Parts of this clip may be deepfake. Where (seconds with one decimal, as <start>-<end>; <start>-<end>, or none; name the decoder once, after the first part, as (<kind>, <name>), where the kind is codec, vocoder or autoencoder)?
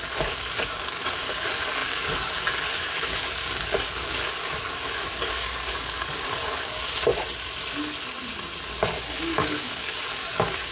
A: 0.0-7.1 (codec, DAC); 9.1-10.7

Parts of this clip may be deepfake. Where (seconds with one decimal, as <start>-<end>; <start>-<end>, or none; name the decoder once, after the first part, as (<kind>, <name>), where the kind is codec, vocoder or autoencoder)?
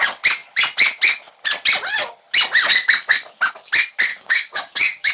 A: 4.1-5.1 (codec, DAC)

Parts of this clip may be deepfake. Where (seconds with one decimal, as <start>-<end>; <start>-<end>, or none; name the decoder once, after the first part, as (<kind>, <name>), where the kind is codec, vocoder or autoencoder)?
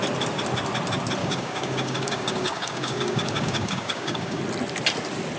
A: 1.2-4.4 (codec, DAC)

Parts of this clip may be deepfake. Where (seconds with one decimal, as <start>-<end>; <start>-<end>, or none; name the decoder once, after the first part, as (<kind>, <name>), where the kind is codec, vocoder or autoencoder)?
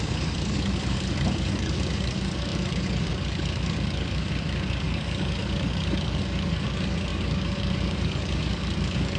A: 0.0-9.2 (codec, DAC)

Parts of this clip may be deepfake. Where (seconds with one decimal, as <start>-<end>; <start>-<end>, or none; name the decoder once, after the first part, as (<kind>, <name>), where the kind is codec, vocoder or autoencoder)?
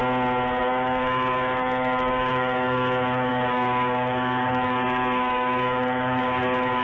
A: 0.6-6.8 (codec, DAC)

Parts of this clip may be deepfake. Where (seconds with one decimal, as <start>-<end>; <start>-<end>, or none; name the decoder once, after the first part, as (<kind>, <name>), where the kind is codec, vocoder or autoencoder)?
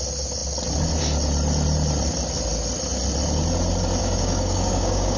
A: 4.0-5.2 (codec, DAC)